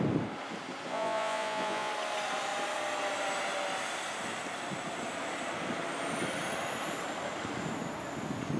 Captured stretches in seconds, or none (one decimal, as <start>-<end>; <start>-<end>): 0.0-0.9; 1.9-8.6